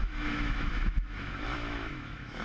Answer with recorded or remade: remade